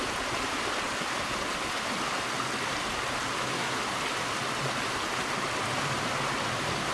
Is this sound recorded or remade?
recorded